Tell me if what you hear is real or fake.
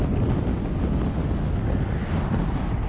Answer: real